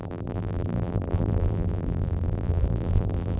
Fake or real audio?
fake